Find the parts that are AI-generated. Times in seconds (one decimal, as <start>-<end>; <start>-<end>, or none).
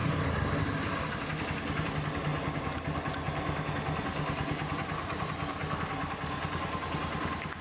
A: none